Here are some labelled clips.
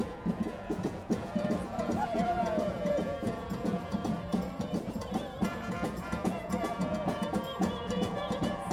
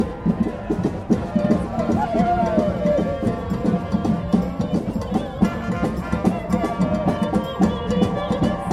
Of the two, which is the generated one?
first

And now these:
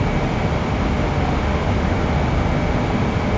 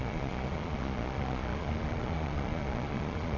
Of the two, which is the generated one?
second